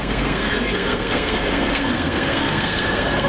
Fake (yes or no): yes